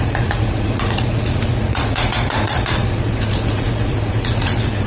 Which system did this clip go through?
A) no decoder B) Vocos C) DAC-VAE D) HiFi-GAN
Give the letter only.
B